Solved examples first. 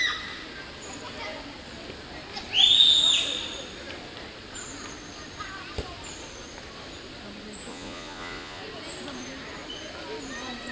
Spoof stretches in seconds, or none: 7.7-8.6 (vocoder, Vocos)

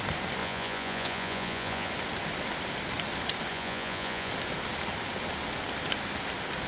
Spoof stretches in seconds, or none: 0.4-1.9 (vocoder, Vocos); 3.5-4.3

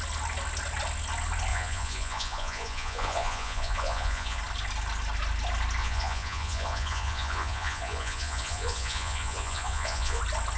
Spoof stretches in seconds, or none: 1.5-4.4 (vocoder, Vocos); 5.8-10.2